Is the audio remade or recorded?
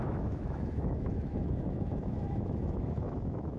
remade